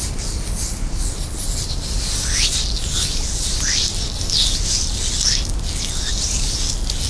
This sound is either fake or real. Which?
real